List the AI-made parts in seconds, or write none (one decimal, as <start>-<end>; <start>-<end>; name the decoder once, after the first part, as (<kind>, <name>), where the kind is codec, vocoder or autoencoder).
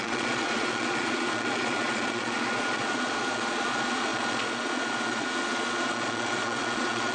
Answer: 0.0-7.1 (vocoder, Vocos)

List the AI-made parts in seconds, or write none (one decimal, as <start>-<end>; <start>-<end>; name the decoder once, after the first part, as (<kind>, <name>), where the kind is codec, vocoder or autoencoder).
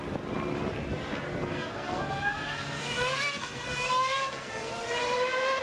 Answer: 1.5-4.7 (codec, SNAC)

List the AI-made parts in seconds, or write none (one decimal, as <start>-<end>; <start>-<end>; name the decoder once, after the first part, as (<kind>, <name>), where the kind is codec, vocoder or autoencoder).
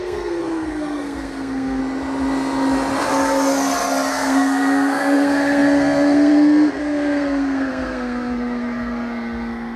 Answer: 0.0-1.8 (codec, SNAC); 4.1-9.8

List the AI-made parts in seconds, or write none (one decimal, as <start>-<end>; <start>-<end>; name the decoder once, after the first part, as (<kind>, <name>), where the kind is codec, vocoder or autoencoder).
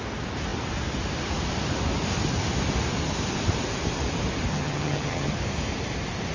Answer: 4.5-5.3 (vocoder, HiFi-GAN)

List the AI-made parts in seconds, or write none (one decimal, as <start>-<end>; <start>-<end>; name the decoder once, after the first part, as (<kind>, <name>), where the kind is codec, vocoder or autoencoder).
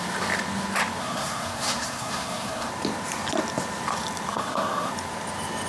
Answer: 1.0-2.7 (codec, SNAC); 4.3-4.9